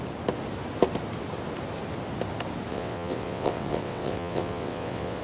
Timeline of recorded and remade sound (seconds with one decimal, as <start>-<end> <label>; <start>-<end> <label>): 0.0-2.7 recorded; 2.7-5.2 remade